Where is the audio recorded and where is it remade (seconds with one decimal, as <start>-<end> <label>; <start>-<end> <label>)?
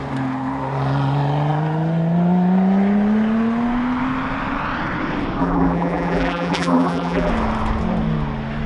0.0-5.4 recorded; 5.4-7.3 remade; 7.3-8.7 recorded